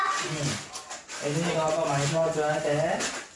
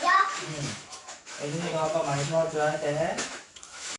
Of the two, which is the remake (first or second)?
second